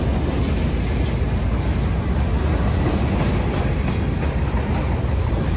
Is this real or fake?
real